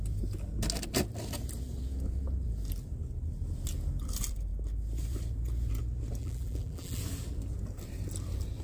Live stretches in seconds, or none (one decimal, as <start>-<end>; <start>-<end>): 0.0-6.2; 7.0-8.6

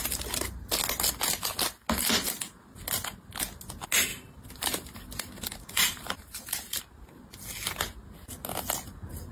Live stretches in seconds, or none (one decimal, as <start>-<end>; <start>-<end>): 0.0-4.1; 6.8-9.3

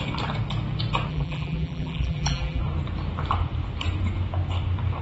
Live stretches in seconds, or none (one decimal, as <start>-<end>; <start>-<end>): 0.0-1.1; 2.6-5.0

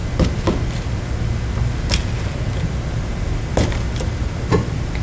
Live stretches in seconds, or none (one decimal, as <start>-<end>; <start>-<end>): 0.0-3.0

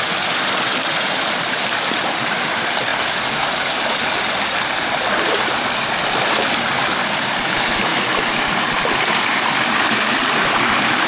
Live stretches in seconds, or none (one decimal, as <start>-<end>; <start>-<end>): 2.9-7.0

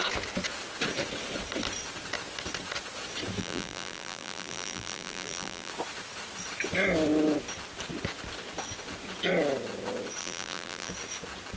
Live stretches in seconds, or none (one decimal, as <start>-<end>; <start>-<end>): 0.0-3.4; 5.7-10.2; 10.9-11.6

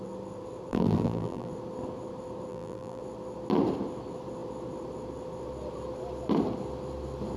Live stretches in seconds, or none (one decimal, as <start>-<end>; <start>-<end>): 0.0-0.7; 1.5-2.5; 3.0-7.4